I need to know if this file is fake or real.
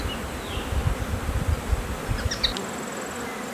real